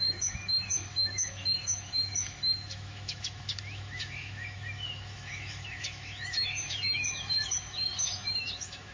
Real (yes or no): no